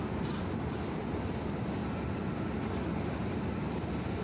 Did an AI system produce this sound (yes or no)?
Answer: no